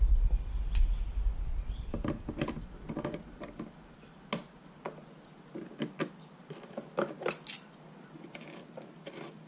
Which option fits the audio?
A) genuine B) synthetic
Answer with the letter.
A